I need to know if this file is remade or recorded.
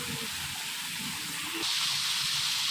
recorded